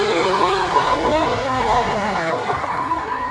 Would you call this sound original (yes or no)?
no